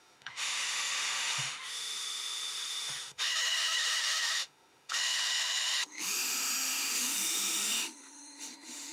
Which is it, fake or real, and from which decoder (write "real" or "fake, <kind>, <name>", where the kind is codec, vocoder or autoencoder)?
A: fake, autoencoder, DAC-VAE